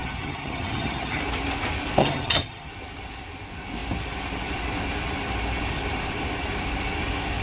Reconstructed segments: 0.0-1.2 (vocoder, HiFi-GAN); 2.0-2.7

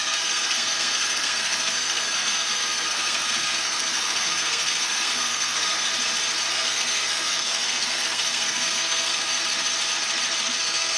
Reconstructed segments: 0.0-5.9 (codec, SNAC); 6.5-9.3; 10.6-11.0

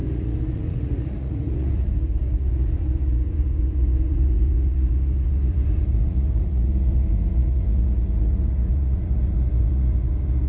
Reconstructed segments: 0.0-10.5 (vocoder, Vocos)

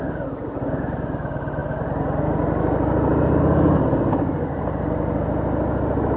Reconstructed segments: none

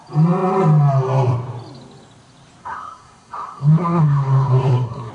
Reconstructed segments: 2.6-5.1 (codec, SNAC)